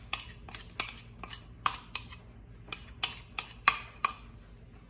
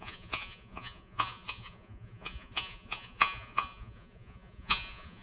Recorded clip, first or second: first